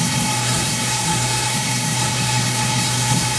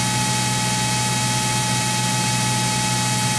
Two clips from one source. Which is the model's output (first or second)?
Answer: first